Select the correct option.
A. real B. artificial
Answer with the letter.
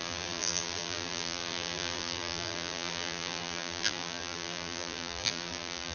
B